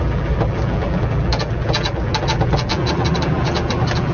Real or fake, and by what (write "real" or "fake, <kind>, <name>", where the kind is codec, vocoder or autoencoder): fake, vocoder, BigVGAN v2